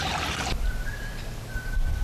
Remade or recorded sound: recorded